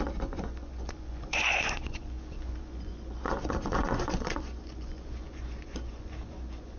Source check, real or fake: fake